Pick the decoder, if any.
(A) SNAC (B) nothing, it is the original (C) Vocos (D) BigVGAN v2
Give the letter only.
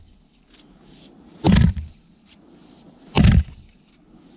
B